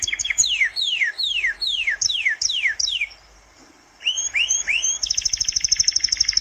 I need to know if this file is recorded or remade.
remade